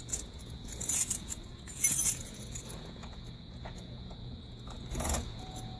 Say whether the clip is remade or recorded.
remade